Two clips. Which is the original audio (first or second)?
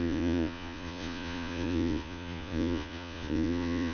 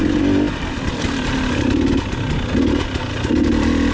second